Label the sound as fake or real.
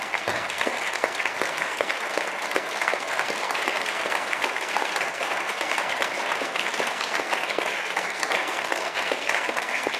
fake